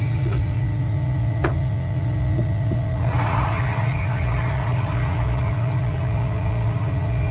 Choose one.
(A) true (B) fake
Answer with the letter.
B